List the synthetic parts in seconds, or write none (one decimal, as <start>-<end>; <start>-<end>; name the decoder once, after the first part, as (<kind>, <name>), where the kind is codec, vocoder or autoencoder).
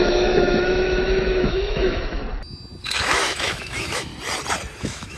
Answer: 0.0-2.2 (autoencoder, DAC-VAE); 2.8-4.1; 4.8-5.2